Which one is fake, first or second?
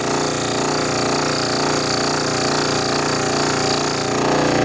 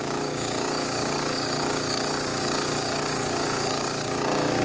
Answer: second